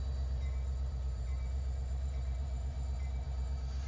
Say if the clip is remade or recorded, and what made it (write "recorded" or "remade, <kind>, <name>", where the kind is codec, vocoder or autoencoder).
remade, vocoder, BigVGAN v2